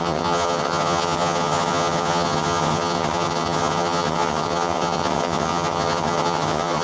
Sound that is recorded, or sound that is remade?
remade